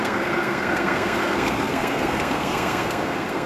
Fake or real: fake